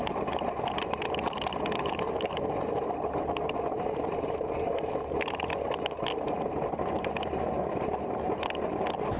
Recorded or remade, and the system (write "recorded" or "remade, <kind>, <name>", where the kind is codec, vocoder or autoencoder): recorded